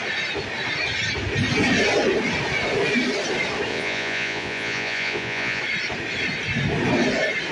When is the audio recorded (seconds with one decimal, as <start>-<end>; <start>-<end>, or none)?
0.0-3.7; 5.6-7.5